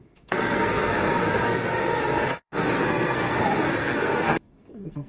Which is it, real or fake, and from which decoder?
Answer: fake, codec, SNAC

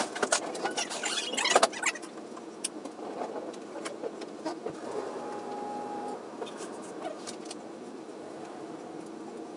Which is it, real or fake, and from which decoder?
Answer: real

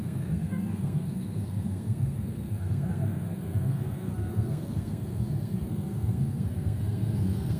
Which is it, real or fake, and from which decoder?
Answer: fake, codec, SNAC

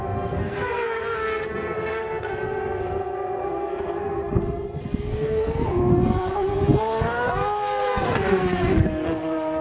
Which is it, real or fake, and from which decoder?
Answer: fake, codec, SNAC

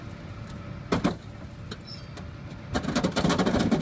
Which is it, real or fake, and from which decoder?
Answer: real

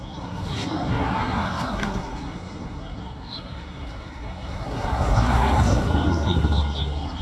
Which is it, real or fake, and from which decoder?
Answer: fake, codec, SNAC